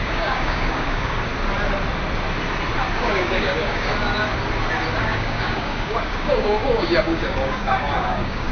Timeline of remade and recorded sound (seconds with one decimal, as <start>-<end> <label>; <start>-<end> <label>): 0.0-1.3 remade; 1.3-2.9 recorded; 2.9-3.9 remade; 3.9-5.0 recorded; 5.0-8.5 remade